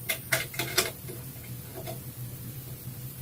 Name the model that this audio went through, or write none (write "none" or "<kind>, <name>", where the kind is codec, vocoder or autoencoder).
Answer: none